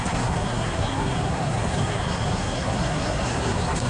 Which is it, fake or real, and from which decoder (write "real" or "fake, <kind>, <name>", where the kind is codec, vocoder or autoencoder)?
fake, codec, SNAC